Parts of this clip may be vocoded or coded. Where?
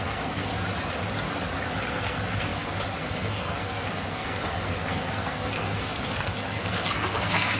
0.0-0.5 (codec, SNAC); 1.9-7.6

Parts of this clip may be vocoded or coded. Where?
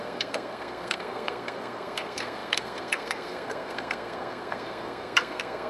0.0-5.7 (codec, SNAC)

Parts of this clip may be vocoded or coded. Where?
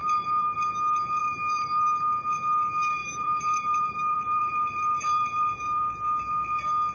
0.0-0.7 (vocoder, BigVGAN v2); 1.2-2.0; 3.0-5.8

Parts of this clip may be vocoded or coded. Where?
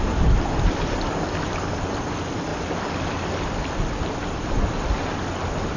2.5-3.3 (vocoder, BigVGAN v2)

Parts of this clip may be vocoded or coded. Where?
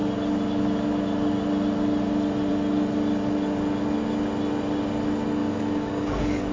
5.4-6.5 (codec, DAC)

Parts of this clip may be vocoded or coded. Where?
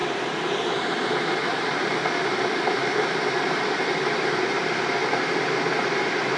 0.0-6.4 (vocoder, BigVGAN v2)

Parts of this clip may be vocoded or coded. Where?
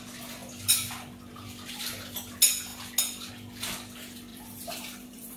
4.3-5.4 (vocoder, BigVGAN v2)